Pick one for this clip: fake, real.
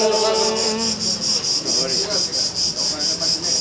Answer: real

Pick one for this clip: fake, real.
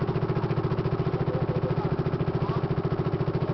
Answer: real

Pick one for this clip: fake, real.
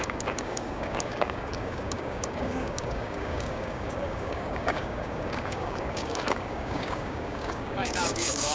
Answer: fake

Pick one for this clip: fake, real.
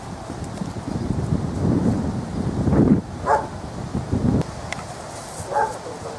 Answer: real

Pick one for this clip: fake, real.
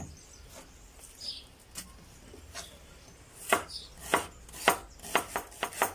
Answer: real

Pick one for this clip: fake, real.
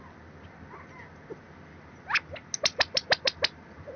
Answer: real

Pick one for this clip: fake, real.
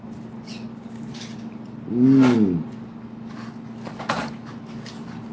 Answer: real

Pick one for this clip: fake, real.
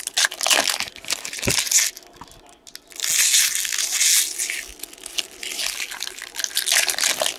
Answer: real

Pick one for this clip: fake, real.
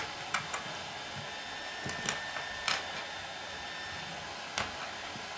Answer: real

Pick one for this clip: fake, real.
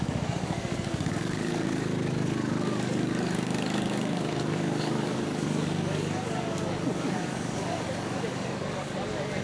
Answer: fake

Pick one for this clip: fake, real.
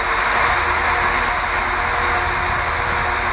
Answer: real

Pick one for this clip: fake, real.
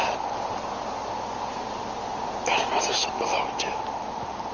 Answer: real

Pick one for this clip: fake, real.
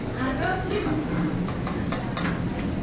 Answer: real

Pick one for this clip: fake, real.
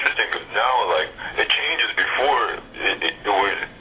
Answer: fake